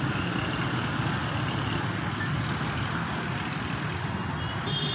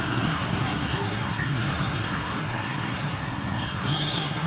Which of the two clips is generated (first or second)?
second